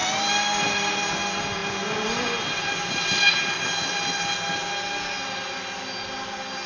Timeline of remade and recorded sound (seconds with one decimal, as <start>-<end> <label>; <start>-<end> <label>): 0.0-6.7 recorded